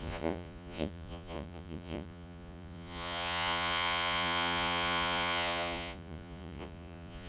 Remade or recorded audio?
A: remade